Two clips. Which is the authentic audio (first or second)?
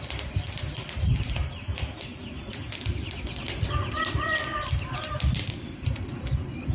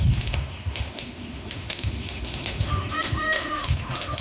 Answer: first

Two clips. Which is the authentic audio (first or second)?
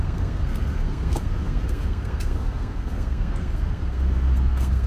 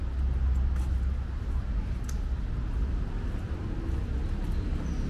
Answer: second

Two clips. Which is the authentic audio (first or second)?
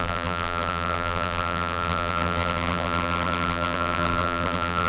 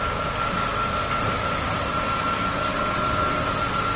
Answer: second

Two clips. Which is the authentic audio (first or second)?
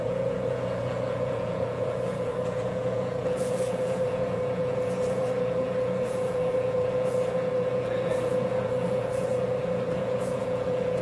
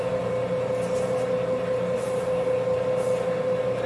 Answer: second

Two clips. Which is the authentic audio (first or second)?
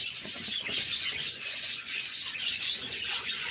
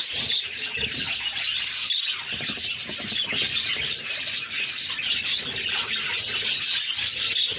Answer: second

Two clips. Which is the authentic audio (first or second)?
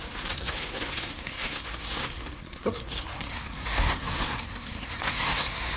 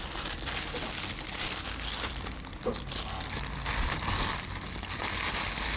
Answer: second